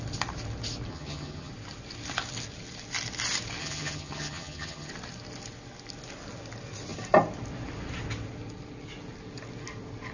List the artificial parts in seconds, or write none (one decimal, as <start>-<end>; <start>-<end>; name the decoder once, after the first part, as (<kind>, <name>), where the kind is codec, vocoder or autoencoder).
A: 0.9-1.5 (vocoder, HiFi-GAN); 3.6-4.9